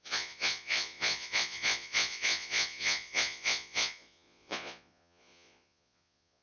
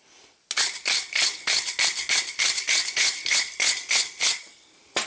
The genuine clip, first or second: second